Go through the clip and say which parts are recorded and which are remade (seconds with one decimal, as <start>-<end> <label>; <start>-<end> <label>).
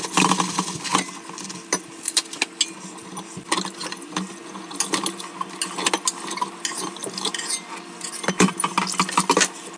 0.0-7.0 recorded; 7.0-7.7 remade; 7.7-9.8 recorded